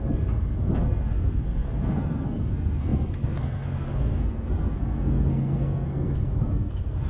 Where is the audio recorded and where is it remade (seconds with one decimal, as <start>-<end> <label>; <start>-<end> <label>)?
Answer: 0.0-7.1 remade